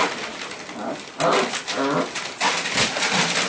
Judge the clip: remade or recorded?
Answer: recorded